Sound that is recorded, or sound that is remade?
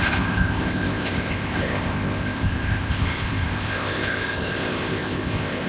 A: remade